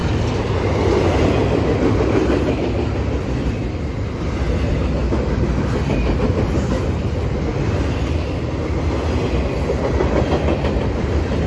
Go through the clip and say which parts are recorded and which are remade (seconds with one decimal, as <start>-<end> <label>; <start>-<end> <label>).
0.0-11.5 recorded